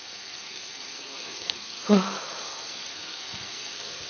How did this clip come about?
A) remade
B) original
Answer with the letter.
A